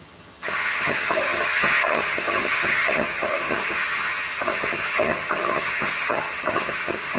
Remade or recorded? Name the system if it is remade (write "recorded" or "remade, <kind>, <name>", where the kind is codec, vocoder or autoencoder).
remade, vocoder, HiFi-GAN